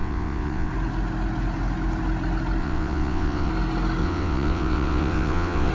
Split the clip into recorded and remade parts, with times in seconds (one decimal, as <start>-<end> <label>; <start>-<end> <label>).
0.0-0.7 remade; 0.7-2.6 recorded; 2.6-3.5 remade; 3.5-4.0 recorded; 4.0-5.7 remade